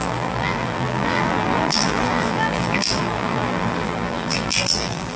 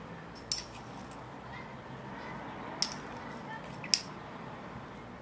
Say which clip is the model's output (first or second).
first